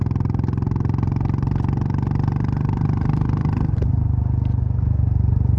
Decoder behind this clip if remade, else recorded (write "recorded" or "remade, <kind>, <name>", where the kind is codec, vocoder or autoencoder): recorded